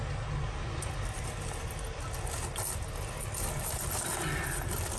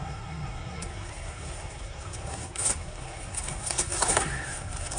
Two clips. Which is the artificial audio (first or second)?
second